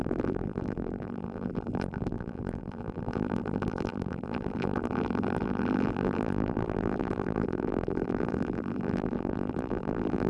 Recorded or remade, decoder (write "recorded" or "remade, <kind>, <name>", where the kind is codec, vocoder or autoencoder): remade, vocoder, BigVGAN v2